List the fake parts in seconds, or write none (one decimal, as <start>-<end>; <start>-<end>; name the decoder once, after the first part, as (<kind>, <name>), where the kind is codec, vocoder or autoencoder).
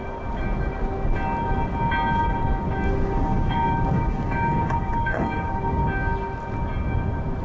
2.9-5.8 (codec, DAC)